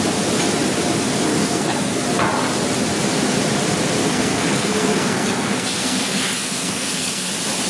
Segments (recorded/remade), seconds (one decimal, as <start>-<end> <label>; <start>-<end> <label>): 0.0-1.4 recorded; 1.4-2.0 remade; 2.0-4.0 recorded; 4.0-7.3 remade; 7.3-7.7 recorded